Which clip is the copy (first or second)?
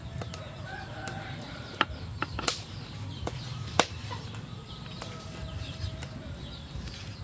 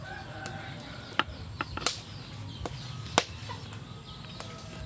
first